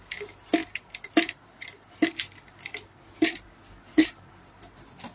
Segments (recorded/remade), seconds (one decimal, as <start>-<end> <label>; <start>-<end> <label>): 0.0-0.6 recorded; 0.6-3.7 remade; 3.7-5.1 recorded